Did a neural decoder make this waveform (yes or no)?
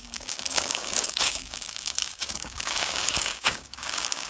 yes